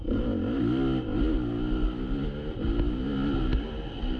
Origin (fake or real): real